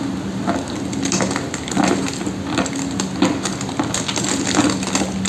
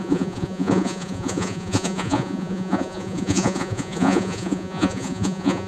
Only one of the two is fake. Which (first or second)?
second